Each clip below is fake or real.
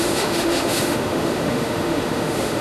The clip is fake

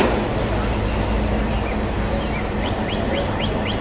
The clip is real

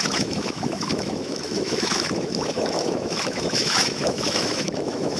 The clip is fake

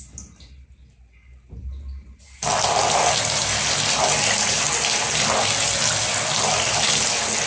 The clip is real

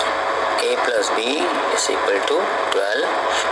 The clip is real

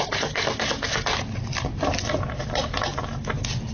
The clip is real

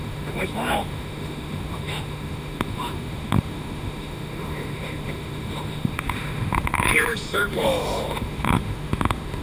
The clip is fake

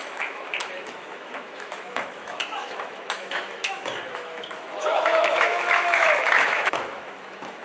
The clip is fake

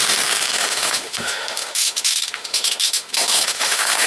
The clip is fake